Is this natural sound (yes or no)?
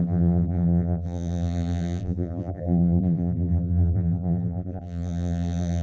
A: no